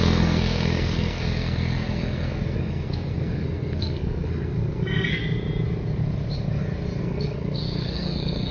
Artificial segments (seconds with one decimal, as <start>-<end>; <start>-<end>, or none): 0.0-5.2; 7.0-8.5